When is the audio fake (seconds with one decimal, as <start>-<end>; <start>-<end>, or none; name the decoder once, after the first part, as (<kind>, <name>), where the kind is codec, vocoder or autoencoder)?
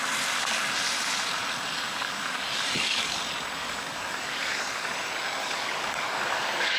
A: 1.9-3.2 (codec, DAC); 3.6-4.9; 5.4-6.8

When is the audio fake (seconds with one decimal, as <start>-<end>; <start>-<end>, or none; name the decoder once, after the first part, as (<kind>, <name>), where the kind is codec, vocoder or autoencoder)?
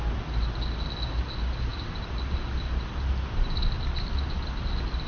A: none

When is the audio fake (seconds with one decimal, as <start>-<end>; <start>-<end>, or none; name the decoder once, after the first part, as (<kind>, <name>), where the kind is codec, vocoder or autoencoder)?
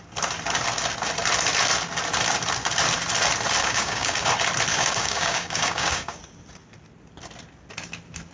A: 3.6-4.3 (codec, DAC); 4.7-6.2